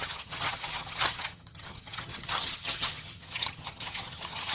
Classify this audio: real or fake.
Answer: fake